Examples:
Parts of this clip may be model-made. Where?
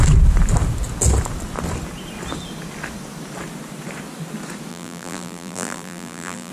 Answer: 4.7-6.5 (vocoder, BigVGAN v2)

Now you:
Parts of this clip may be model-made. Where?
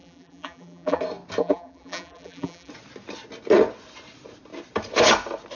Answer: 0.0-1.0 (vocoder, BigVGAN v2); 1.4-2.7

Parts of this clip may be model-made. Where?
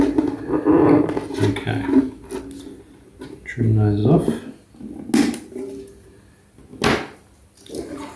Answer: none